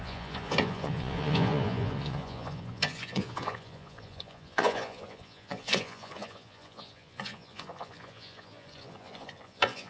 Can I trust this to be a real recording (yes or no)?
no